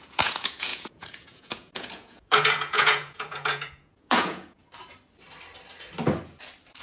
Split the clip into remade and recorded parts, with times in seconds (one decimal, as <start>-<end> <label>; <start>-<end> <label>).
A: 0.0-4.6 remade; 4.6-6.8 recorded